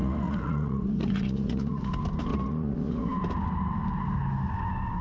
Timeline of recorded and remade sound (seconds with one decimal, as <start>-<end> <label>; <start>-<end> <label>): 0.0-1.9 remade; 1.9-2.3 recorded; 2.3-3.1 remade; 3.1-5.0 recorded